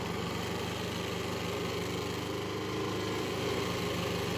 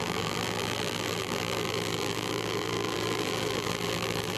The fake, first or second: second